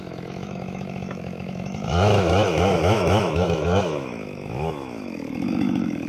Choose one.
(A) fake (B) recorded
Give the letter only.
A